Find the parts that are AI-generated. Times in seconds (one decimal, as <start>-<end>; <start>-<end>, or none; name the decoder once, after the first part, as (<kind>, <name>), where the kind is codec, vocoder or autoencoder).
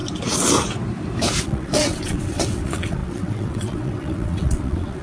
1.4-5.0 (vocoder, WaveNeXt)